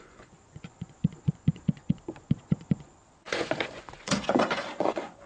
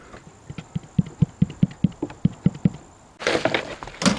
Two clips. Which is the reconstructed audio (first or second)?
first